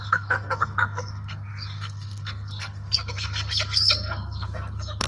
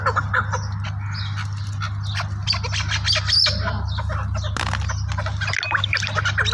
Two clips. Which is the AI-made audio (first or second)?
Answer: first